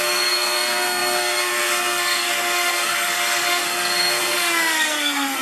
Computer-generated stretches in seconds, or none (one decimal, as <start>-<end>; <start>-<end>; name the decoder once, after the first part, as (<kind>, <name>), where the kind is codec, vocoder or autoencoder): 0.0-5.4 (codec, SNAC)